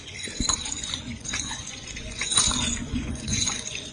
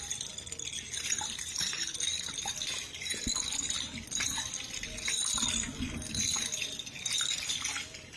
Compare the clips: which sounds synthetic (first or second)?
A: first